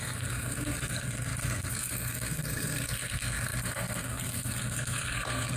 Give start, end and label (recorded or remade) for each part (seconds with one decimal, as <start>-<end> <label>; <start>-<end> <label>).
0.0-5.6 remade